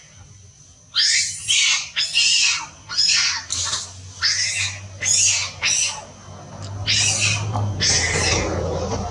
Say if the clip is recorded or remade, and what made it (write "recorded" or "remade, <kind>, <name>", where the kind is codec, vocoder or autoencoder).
recorded